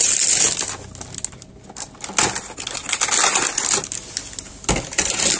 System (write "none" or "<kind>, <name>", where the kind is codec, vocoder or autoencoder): none